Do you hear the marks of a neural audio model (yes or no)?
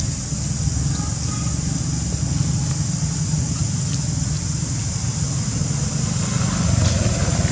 no